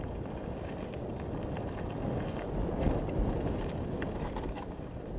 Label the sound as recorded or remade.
recorded